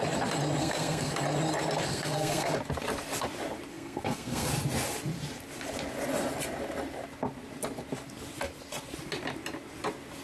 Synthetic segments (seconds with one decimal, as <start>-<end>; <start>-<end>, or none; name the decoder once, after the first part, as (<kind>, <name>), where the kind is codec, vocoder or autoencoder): 0.6-1.1 (codec, SNAC); 1.9-2.5; 3.7-4.5